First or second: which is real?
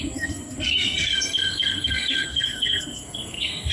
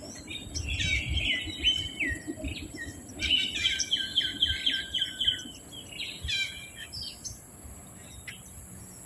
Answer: second